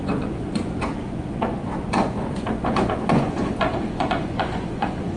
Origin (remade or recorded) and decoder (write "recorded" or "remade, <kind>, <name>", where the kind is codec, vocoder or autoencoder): remade, vocoder, Vocos